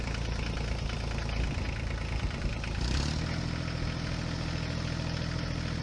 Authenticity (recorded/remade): recorded